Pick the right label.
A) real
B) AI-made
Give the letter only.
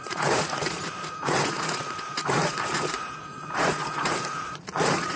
B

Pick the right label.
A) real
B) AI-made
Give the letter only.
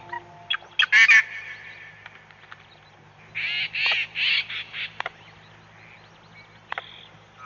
A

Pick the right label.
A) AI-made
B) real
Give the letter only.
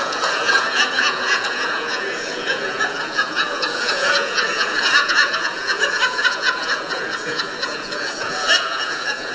A